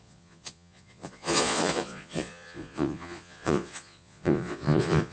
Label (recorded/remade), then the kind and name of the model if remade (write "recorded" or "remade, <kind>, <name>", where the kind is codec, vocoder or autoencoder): remade, vocoder, Vocos